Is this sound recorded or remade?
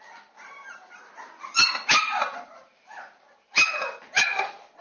recorded